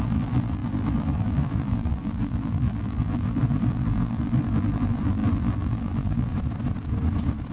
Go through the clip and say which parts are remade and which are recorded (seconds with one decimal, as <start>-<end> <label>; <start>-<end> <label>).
0.0-6.3 remade; 6.3-7.5 recorded